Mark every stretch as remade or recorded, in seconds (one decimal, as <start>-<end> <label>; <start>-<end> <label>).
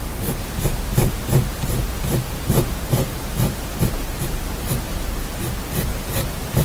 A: 0.0-5.9 remade; 5.9-6.6 recorded